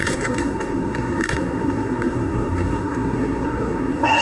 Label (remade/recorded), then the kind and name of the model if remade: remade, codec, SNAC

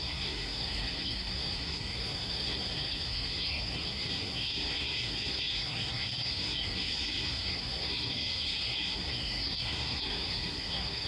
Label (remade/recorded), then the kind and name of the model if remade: remade, codec, SNAC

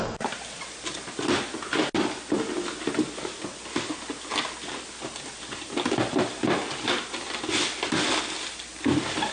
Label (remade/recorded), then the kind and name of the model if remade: recorded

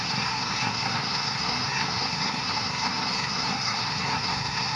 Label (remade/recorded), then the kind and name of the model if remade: remade, codec, SNAC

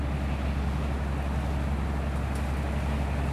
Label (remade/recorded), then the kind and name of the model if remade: recorded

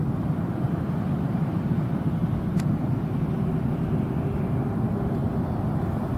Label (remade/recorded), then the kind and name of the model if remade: recorded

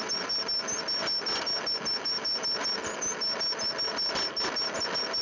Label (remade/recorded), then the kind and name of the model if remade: recorded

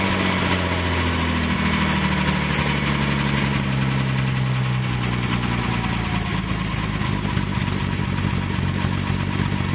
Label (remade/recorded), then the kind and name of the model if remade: recorded